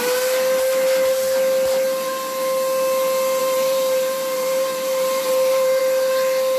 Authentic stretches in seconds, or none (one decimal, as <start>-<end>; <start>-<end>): 0.0-3.4; 5.8-6.6